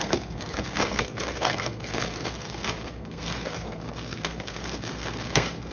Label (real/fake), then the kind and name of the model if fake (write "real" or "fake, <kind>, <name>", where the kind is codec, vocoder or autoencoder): fake, codec, SNAC